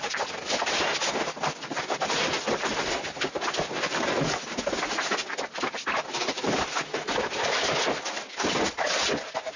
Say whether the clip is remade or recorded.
recorded